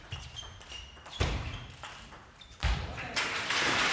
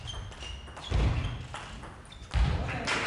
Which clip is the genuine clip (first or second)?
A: second